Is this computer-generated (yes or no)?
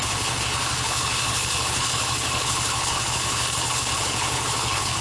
yes